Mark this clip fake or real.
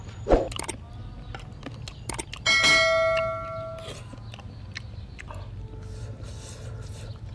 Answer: real